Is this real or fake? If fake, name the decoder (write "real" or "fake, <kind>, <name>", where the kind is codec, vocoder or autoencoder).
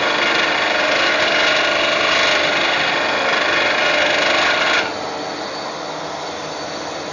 real